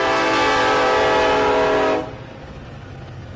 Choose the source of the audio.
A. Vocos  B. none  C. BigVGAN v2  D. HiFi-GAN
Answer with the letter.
B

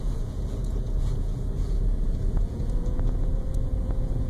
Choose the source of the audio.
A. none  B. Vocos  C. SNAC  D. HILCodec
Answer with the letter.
B